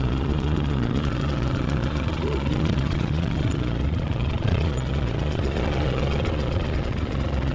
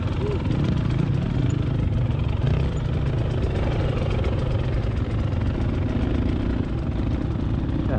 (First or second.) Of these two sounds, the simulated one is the first